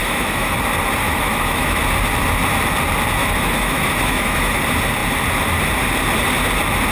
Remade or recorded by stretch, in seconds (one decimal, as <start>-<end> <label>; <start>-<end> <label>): 0.0-0.5 remade; 0.5-1.0 recorded; 1.0-1.8 remade; 1.8-3.2 recorded; 3.2-4.6 remade; 4.6-6.9 recorded